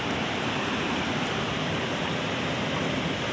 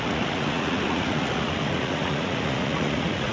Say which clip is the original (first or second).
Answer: first